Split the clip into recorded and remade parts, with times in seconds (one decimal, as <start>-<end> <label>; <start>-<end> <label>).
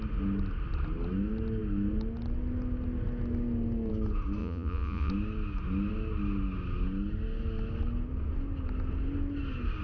0.0-4.4 recorded; 4.4-5.1 remade; 5.1-9.8 recorded